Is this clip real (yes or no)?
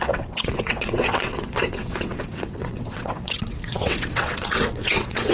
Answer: no